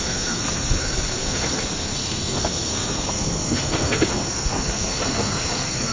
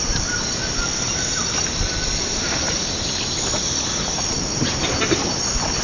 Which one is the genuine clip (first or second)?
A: second